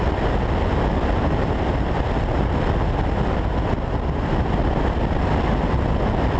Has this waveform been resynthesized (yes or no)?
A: no